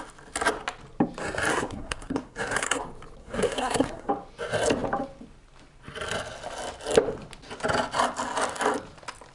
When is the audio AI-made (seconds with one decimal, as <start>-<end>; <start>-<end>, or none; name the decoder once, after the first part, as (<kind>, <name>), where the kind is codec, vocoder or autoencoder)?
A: 1.5-2.8 (codec, SNAC); 3.2-4.1